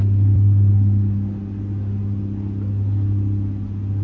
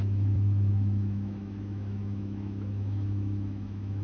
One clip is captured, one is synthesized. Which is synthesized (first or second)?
second